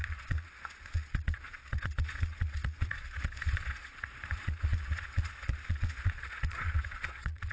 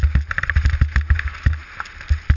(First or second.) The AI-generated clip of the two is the first